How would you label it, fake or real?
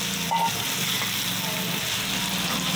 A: real